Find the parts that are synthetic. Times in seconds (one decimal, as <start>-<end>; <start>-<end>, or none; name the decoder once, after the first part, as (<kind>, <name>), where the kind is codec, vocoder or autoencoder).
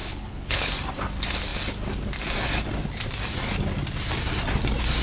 0.0-0.7 (codec, HILCodec)